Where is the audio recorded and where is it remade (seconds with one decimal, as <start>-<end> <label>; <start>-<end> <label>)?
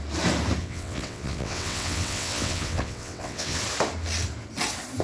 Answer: 0.0-0.6 recorded; 0.6-3.6 remade; 3.6-5.0 recorded